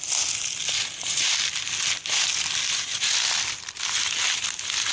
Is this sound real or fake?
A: real